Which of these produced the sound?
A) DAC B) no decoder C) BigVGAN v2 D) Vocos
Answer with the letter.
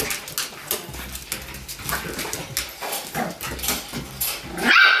B